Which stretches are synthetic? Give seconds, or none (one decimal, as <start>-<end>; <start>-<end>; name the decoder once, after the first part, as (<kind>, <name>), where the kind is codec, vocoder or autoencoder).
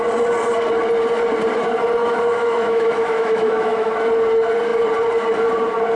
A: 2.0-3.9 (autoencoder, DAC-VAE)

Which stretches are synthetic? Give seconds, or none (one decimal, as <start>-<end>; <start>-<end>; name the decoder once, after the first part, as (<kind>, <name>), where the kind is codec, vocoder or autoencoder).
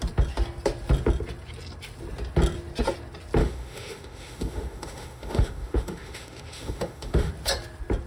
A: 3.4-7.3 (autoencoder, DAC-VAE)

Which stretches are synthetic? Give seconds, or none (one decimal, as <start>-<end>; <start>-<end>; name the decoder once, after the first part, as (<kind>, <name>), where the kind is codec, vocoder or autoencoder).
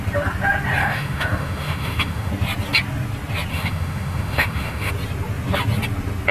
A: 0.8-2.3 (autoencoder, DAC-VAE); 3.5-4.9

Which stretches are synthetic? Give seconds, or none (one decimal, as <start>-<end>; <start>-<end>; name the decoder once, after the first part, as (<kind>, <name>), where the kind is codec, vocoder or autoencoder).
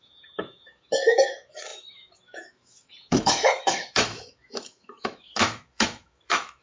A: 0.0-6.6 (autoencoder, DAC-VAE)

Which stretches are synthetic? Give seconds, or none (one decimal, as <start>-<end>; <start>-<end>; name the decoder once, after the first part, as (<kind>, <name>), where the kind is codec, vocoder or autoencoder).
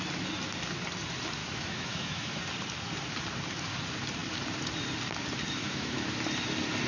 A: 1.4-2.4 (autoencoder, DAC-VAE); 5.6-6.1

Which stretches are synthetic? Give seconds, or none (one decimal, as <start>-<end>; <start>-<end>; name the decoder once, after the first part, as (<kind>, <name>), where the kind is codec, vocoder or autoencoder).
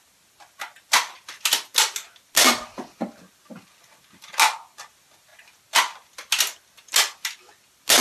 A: none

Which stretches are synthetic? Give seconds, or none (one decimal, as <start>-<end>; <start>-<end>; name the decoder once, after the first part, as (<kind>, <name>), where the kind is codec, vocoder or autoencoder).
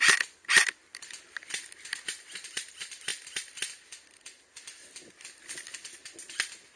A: none